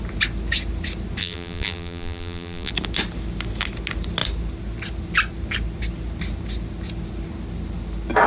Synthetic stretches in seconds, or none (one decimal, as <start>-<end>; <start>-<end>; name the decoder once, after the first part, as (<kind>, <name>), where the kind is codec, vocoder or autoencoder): 1.2-2.7 (vocoder, BigVGAN v2)